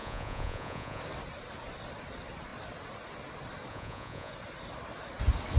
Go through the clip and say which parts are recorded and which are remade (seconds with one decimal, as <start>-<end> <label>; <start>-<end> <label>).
0.0-1.0 remade; 1.0-3.7 recorded; 3.7-4.3 remade; 4.3-5.6 recorded